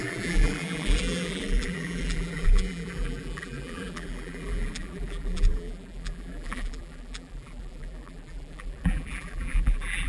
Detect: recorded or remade remade